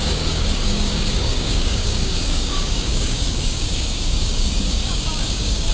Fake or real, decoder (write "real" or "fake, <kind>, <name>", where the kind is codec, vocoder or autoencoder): fake, codec, DAC